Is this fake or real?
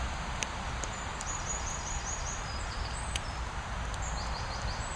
fake